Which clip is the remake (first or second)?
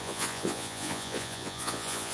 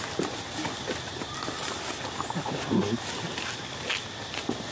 first